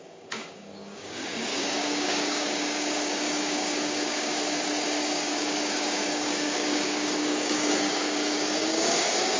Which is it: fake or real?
fake